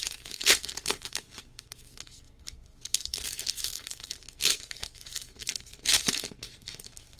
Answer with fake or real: fake